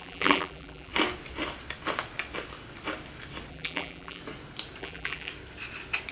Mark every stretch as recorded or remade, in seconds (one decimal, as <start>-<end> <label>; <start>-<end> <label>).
0.0-0.9 remade; 0.9-3.5 recorded; 3.5-4.2 remade; 4.2-4.8 recorded; 4.8-5.3 remade; 5.3-6.1 recorded

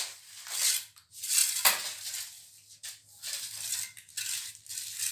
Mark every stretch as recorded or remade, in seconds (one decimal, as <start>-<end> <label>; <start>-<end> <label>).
0.0-5.1 recorded

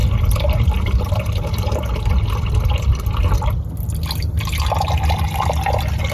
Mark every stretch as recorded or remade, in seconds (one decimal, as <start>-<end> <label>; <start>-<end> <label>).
0.0-6.1 recorded

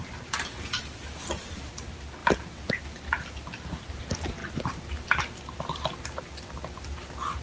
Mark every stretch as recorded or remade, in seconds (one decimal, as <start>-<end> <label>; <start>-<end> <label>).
0.0-4.4 recorded; 4.4-6.2 remade; 6.2-7.4 recorded

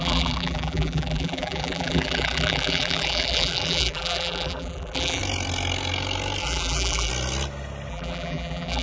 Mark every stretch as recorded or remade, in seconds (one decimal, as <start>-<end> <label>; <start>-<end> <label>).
0.0-5.2 remade; 5.2-6.4 recorded; 6.4-7.1 remade; 7.1-7.9 recorded; 7.9-8.8 remade

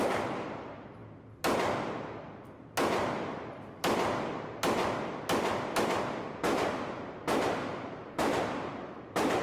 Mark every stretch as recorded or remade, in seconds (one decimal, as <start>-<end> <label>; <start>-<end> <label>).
0.0-8.0 recorded; 8.0-9.4 remade

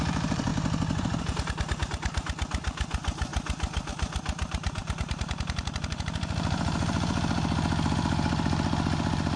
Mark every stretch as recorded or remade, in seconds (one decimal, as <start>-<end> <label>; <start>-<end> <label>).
0.0-0.5 remade; 0.5-1.0 recorded; 1.0-3.3 remade; 3.3-3.9 recorded; 3.9-9.4 remade